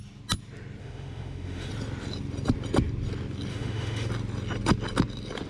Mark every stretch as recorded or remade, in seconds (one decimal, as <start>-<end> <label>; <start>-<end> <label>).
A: 0.0-0.8 recorded; 0.8-1.7 remade; 1.7-3.5 recorded; 3.5-4.1 remade; 4.1-5.5 recorded